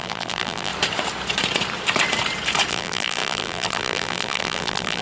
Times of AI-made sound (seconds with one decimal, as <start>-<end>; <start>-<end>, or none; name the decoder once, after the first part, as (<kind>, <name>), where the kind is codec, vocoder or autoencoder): 0.0-0.7 (vocoder, BigVGAN v2); 2.7-5.0